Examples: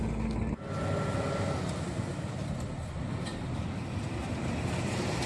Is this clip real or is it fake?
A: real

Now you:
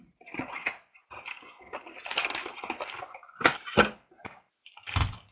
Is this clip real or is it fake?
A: real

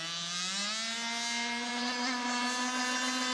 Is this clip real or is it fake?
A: real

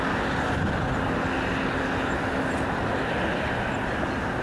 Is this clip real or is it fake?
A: real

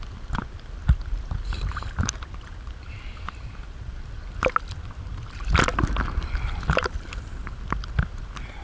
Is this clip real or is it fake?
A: real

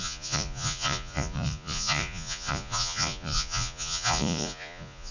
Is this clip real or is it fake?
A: fake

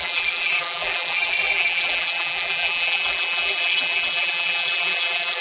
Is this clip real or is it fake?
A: fake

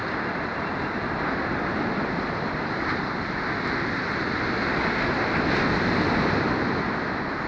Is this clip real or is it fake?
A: real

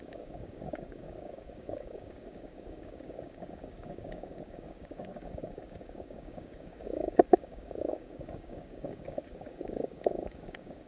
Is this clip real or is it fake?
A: fake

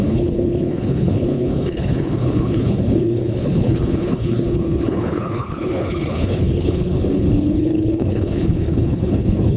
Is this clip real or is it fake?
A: fake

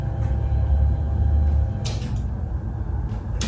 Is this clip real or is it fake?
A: real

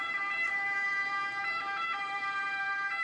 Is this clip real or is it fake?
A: fake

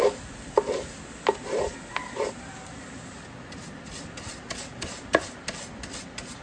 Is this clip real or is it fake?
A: real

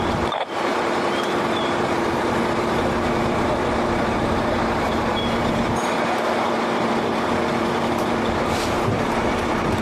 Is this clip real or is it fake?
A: fake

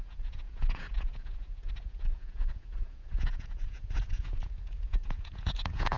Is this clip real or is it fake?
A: fake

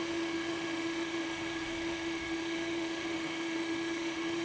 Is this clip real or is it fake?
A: fake